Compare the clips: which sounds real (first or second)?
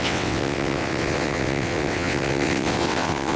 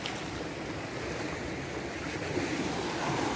second